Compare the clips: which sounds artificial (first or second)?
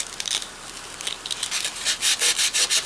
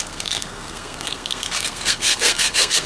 second